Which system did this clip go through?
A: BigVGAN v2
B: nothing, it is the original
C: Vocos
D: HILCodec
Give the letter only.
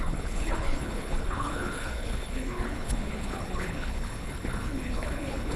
D